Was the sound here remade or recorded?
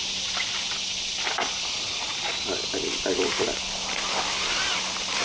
recorded